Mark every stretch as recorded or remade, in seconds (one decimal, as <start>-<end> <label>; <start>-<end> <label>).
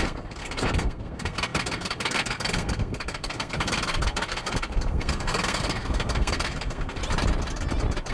0.0-7.0 remade; 7.0-8.1 recorded